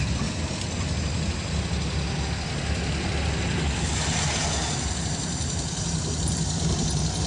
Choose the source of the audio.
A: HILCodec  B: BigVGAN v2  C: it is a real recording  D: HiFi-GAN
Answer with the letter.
C